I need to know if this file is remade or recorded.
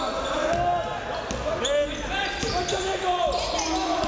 recorded